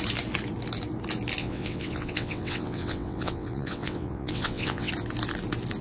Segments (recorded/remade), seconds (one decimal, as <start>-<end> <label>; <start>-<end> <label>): 0.0-1.4 recorded; 1.4-4.9 remade; 4.9-5.8 recorded